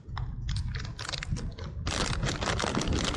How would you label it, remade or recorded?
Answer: recorded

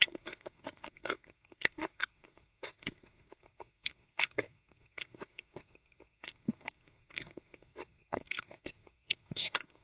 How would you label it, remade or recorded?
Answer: remade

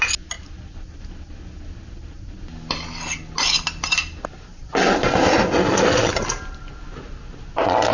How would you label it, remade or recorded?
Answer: recorded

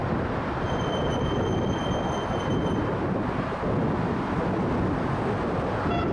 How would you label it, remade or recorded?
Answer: recorded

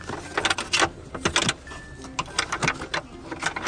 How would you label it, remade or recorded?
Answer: recorded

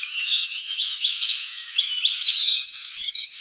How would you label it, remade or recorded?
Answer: remade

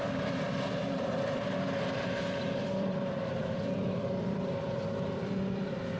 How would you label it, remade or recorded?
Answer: remade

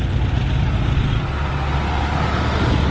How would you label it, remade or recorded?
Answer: recorded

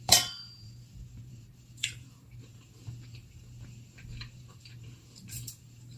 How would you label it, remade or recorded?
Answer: remade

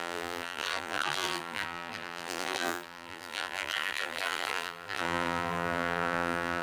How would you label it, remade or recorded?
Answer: remade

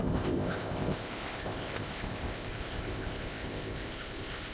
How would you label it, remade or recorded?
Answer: remade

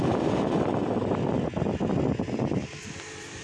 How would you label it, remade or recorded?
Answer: recorded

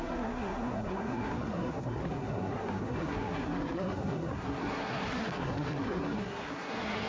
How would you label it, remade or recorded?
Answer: remade